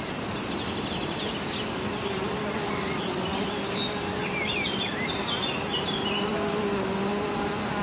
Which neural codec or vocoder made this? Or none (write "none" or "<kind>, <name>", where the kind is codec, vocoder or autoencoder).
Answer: none